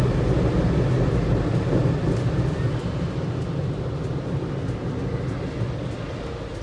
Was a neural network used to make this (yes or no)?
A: no